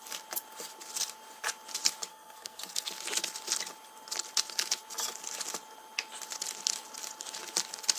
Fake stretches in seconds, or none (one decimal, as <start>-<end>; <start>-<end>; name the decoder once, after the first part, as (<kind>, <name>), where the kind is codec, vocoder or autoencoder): 2.1-2.9 (codec, SNAC)